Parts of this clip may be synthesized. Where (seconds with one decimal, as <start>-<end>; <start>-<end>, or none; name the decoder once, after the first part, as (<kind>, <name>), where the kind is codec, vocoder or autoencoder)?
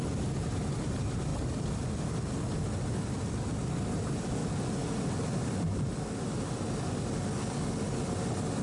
0.4-0.9 (vocoder, BigVGAN v2)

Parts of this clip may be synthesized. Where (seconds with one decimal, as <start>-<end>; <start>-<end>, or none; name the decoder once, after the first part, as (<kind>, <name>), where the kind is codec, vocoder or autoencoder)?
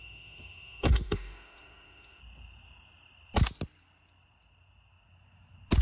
0.0-2.2 (autoencoder, DAC-VAE)